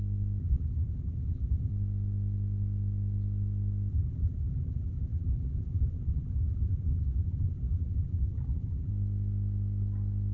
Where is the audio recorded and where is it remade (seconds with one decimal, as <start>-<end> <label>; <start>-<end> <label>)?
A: 0.0-0.4 recorded; 0.4-1.7 remade; 1.7-3.9 recorded; 3.9-8.9 remade; 8.9-10.3 recorded